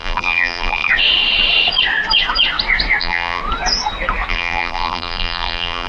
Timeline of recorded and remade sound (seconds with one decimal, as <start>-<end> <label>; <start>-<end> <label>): 0.0-0.9 remade; 0.9-3.0 recorded; 3.0-3.4 remade; 3.4-4.3 recorded; 4.3-5.9 remade